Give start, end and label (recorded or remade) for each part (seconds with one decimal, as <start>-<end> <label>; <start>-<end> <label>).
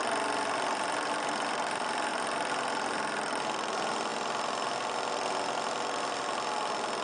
0.0-7.0 recorded